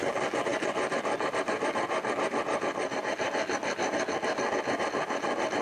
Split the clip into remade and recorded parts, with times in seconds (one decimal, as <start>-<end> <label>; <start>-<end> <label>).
0.0-0.5 remade; 0.5-1.4 recorded; 1.4-3.6 remade; 3.6-4.8 recorded; 4.8-5.6 remade